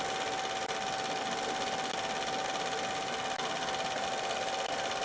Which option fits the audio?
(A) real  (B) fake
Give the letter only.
A